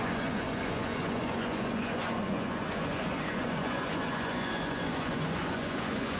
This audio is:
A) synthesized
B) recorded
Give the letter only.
A